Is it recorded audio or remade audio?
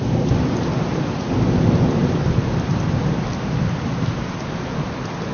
recorded